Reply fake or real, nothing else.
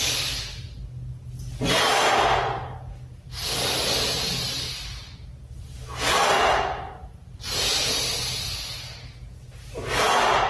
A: real